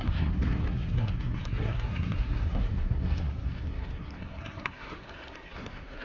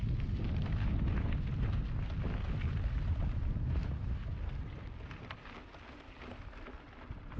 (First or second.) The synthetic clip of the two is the first